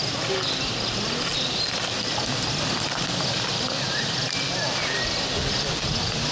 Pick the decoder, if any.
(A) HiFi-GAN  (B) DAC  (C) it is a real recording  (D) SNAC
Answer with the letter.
C